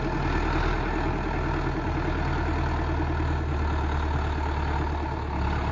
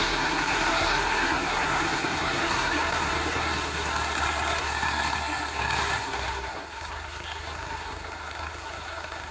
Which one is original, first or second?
first